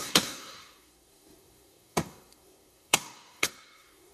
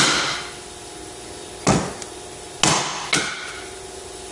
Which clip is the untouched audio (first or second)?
second